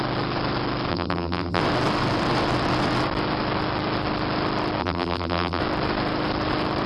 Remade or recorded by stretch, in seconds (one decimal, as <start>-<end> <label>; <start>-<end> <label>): 0.0-0.9 recorded; 0.9-1.6 remade; 1.6-4.8 recorded; 4.8-5.6 remade; 5.6-6.9 recorded